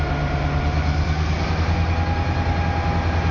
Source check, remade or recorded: recorded